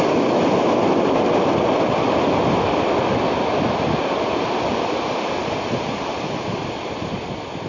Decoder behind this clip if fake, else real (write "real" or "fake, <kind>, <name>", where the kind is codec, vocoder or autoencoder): real